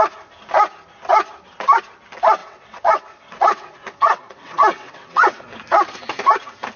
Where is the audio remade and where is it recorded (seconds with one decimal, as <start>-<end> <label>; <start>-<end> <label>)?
0.0-2.4 recorded; 2.4-5.4 remade; 5.4-6.8 recorded